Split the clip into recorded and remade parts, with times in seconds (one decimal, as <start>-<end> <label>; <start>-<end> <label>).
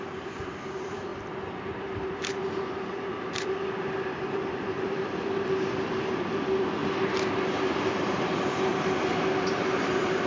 0.0-6.8 remade; 6.8-8.0 recorded; 8.0-8.7 remade; 8.7-9.5 recorded; 9.5-10.3 remade